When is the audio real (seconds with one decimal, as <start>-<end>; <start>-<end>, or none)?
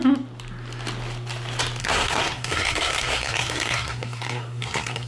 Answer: 0.0-1.8